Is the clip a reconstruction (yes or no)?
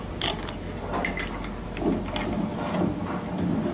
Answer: no